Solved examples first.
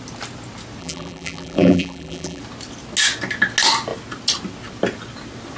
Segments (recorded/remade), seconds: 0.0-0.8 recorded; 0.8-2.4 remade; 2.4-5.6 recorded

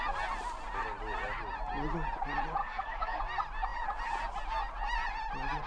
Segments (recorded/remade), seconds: 0.0-2.6 recorded; 2.6-3.2 remade; 3.2-5.7 recorded

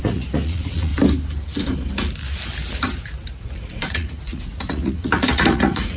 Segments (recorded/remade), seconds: 0.0-0.9 remade; 0.9-3.4 recorded; 3.4-6.0 remade

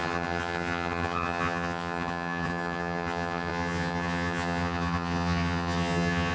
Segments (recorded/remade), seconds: 0.0-6.3 remade

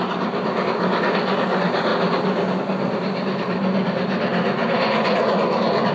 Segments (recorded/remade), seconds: 0.0-4.3 recorded; 4.3-5.4 remade; 5.4-5.9 recorded

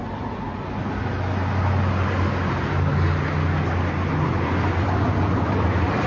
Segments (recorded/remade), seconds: 0.0-6.1 recorded

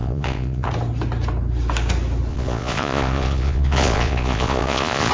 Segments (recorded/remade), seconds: 0.0-0.7 remade; 0.7-2.3 recorded; 2.3-5.1 remade

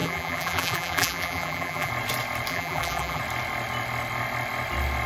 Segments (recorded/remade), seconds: 0.0-1.9 remade; 1.9-2.5 recorded; 2.5-3.2 remade; 3.2-5.1 recorded